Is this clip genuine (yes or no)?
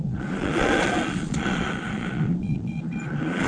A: no